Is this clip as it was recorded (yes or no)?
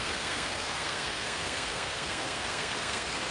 no